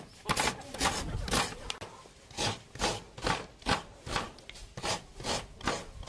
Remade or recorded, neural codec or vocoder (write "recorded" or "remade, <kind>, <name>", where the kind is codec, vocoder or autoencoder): recorded